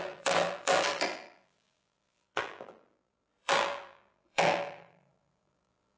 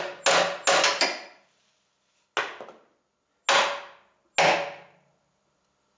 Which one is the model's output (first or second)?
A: first